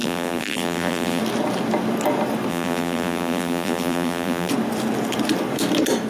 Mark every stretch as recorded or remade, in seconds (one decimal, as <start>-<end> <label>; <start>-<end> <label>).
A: 0.0-1.2 remade; 1.2-2.5 recorded; 2.5-4.5 remade; 4.5-6.1 recorded